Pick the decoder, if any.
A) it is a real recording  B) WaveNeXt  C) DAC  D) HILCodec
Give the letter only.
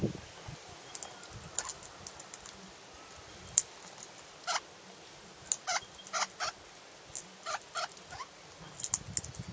A